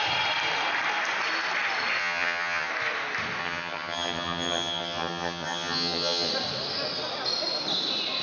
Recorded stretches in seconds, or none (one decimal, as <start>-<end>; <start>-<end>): 0.0-2.0; 2.7-3.4; 6.3-8.2